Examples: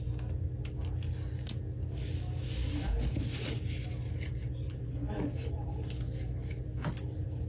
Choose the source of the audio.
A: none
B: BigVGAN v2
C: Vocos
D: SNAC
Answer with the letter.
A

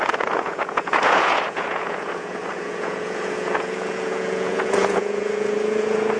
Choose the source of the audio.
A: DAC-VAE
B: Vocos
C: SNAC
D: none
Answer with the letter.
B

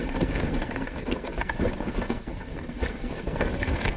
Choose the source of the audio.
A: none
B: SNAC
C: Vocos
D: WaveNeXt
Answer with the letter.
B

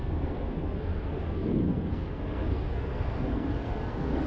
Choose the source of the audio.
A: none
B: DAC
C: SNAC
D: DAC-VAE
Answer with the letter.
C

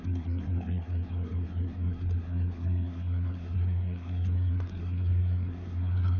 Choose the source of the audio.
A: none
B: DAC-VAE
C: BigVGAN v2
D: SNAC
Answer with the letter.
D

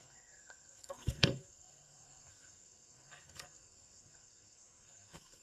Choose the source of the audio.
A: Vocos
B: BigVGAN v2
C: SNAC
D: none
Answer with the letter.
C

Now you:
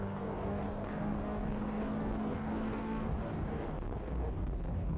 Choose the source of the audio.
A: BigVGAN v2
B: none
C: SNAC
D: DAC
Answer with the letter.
D